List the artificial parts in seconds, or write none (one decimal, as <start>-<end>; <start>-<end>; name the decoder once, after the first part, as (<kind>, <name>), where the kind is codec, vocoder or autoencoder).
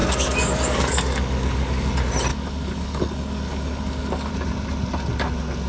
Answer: 0.0-1.9 (codec, DAC); 2.3-4.3